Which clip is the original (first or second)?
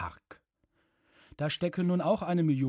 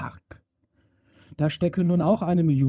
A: first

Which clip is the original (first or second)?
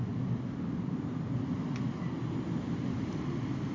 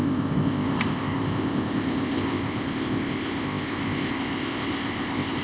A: first